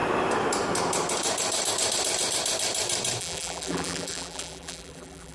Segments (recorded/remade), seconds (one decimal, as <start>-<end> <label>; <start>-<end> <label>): 0.0-3.2 recorded; 3.2-5.3 remade